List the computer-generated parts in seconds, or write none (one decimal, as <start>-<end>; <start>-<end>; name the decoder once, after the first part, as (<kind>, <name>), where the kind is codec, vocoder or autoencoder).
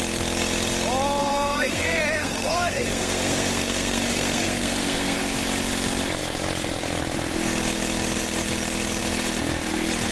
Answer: 1.2-5.2 (codec, SNAC)